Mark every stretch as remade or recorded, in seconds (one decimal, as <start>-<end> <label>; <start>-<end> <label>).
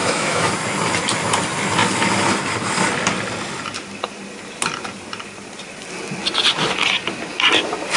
0.0-0.5 remade; 0.5-8.0 recorded